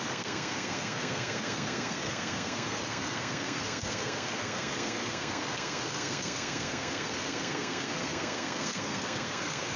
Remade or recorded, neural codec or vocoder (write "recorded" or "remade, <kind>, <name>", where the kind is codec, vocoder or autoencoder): remade, codec, SNAC